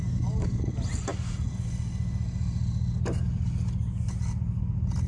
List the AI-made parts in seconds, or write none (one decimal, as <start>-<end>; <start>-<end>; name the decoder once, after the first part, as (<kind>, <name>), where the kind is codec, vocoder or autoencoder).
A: 0.0-0.7 (codec, DAC)